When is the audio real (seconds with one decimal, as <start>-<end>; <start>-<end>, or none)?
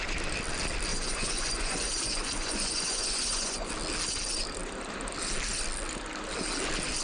0.0-0.9; 3.7-7.0